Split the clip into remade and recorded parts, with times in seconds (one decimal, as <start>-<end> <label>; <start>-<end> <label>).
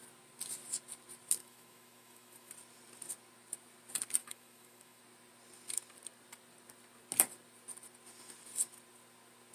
0.0-1.4 recorded; 1.4-2.5 remade; 2.5-4.2 recorded; 4.2-5.0 remade; 5.0-9.5 recorded